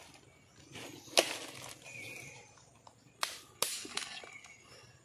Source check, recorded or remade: recorded